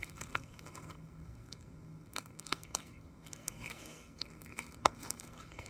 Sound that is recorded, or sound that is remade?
remade